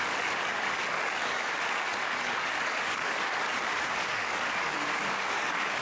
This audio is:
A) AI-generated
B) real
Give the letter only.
A